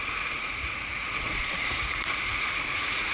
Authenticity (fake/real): fake